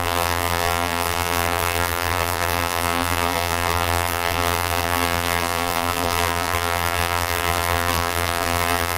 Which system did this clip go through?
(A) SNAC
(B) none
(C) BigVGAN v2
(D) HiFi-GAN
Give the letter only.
C